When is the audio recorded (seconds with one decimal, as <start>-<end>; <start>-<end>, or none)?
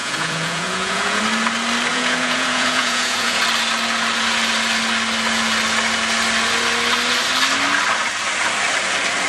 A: 1.2-1.9; 3.4-9.3